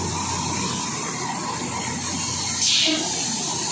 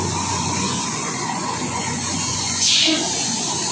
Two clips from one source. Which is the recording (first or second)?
first